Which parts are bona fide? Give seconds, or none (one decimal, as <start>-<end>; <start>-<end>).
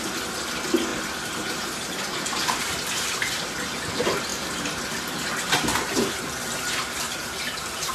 0.0-0.9; 2.6-4.3; 4.8-5.7; 6.2-7.9